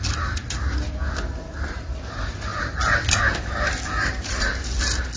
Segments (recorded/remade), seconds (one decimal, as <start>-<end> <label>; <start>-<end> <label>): 0.0-5.2 recorded